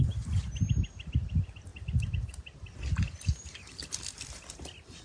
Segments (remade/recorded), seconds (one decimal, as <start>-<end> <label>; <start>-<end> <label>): 0.0-5.0 recorded